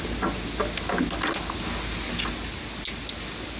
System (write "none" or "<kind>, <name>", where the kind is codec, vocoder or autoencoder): none